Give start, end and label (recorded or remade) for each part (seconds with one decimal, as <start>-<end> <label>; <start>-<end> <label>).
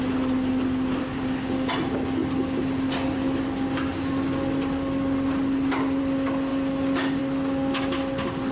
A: 0.0-8.5 recorded